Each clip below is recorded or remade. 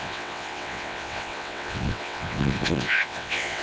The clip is remade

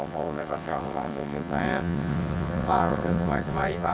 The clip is remade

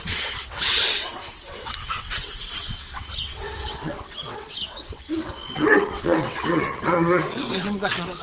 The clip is remade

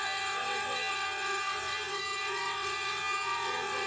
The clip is remade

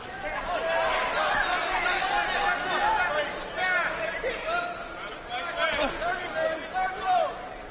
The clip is recorded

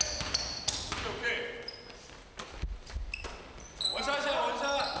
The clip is recorded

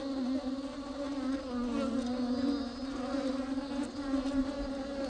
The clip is recorded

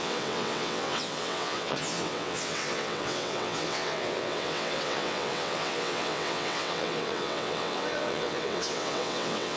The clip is remade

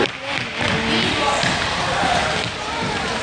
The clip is recorded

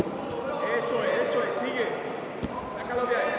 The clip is recorded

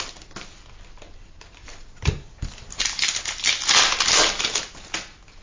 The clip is recorded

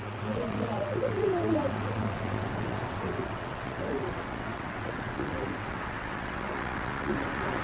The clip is remade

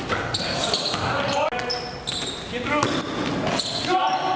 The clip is recorded